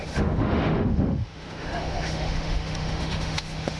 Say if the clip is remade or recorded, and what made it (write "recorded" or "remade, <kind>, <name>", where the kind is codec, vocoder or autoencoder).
remade, autoencoder, DAC-VAE